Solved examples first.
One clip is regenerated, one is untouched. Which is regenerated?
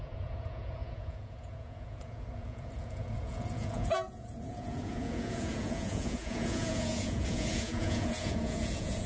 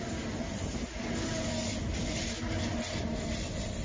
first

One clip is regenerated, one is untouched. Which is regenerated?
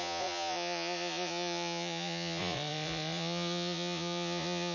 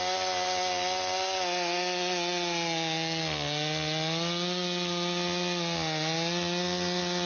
first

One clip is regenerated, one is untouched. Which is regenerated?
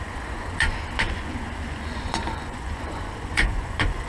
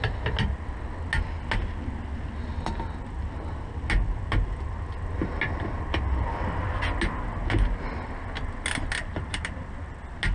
first